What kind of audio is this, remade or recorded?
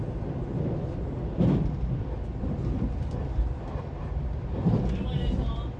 recorded